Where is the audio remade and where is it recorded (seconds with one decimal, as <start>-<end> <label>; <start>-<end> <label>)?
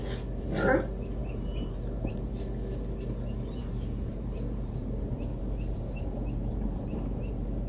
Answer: 0.0-1.2 recorded; 1.2-2.3 remade; 2.3-3.6 recorded; 3.6-7.7 remade